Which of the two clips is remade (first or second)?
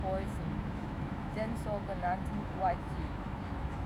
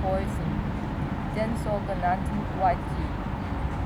first